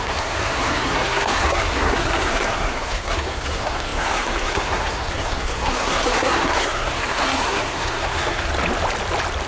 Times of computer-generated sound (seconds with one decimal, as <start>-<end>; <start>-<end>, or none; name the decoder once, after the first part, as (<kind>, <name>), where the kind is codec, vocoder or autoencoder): 0.0-8.5 (codec, SNAC)